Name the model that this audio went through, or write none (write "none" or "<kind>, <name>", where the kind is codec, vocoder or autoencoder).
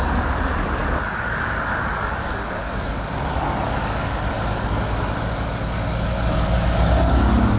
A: codec, DAC